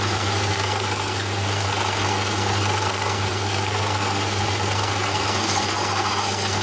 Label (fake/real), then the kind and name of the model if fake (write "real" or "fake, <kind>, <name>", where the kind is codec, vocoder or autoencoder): fake, codec, SNAC